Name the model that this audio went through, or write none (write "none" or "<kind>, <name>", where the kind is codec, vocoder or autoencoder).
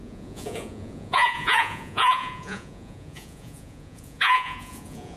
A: vocoder, Vocos